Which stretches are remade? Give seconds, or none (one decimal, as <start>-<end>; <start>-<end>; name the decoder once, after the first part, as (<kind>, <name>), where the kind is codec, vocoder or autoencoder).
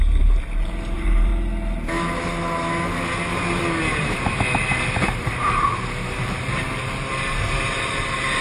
0.0-1.3 (vocoder, BigVGAN v2); 3.9-8.4